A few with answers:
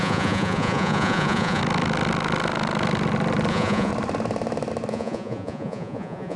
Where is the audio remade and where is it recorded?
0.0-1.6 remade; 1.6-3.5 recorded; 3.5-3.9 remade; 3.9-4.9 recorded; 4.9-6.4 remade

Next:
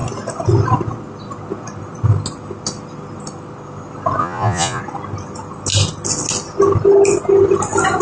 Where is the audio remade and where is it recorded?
0.0-4.2 recorded; 4.2-4.8 remade; 4.8-8.0 recorded